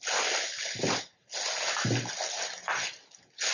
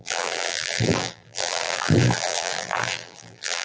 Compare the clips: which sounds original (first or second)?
first